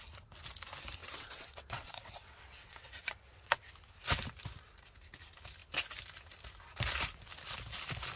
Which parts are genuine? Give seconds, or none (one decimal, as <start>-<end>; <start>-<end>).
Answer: 0.0-1.0; 3.7-8.2